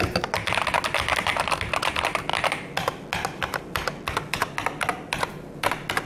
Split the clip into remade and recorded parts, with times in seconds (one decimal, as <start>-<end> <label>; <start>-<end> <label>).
0.0-6.1 recorded